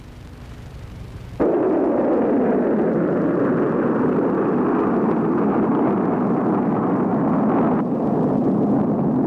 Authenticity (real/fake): real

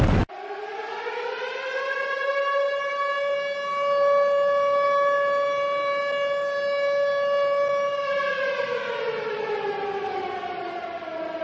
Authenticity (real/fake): real